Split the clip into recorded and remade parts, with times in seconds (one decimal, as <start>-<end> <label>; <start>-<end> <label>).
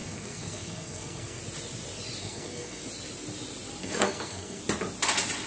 0.0-1.4 remade; 1.4-2.2 recorded; 2.2-2.8 remade; 2.8-3.8 recorded; 3.8-4.6 remade; 4.6-5.5 recorded